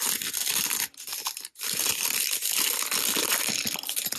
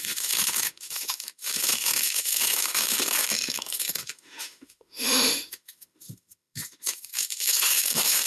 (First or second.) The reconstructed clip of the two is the second